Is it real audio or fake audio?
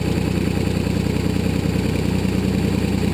real